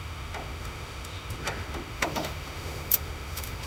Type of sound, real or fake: fake